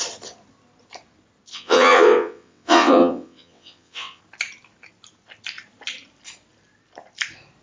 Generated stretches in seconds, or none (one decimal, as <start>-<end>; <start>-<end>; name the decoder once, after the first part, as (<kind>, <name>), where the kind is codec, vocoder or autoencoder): 1.5-4.2 (vocoder, WaveNeXt)